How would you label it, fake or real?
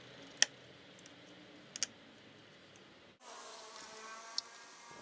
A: real